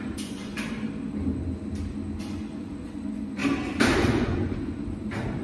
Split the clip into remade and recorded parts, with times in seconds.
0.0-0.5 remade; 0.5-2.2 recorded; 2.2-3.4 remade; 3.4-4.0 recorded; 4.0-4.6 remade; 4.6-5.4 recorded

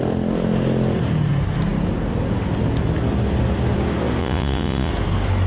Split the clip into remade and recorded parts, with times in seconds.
0.0-4.2 recorded; 4.2-4.9 remade; 4.9-5.5 recorded

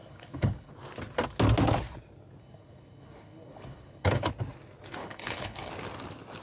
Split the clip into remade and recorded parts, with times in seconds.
0.0-0.7 remade; 0.7-2.4 recorded; 2.4-4.3 remade; 4.3-5.0 recorded; 5.0-5.7 remade; 5.7-6.4 recorded

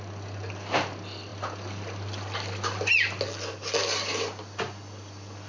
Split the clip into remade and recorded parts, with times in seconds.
0.0-5.5 recorded

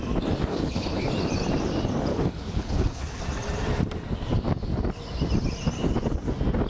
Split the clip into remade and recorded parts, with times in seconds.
0.0-0.5 recorded; 0.5-1.1 remade; 1.1-2.1 recorded; 2.1-3.2 remade; 3.2-6.7 recorded